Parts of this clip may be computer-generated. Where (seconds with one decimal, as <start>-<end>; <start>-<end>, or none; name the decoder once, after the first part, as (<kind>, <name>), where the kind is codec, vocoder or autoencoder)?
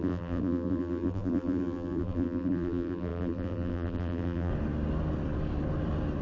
0.0-4.5 (vocoder, BigVGAN v2)